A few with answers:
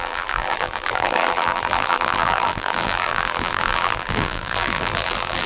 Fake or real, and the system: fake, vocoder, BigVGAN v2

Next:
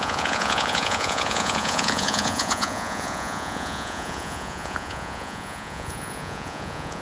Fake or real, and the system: fake, vocoder, Vocos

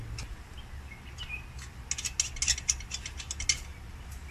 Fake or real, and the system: real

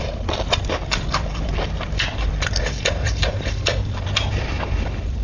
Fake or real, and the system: fake, vocoder, BigVGAN v2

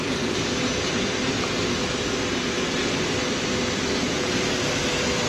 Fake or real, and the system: real